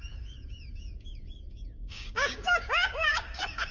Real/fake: fake